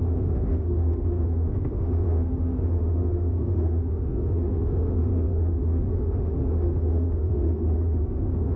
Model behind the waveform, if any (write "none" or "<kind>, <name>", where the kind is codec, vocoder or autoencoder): autoencoder, DAC-VAE